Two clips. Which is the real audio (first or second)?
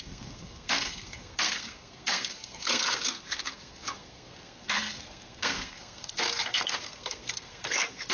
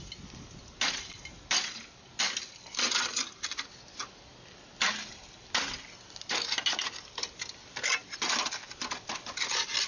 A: second